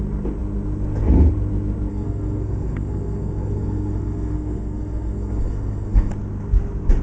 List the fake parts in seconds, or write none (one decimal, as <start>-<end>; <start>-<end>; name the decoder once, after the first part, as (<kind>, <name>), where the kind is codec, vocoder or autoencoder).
1.9-6.1 (codec, SNAC)